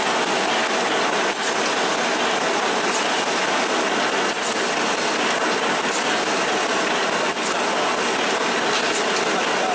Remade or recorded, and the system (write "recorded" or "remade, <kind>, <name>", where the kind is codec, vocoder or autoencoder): recorded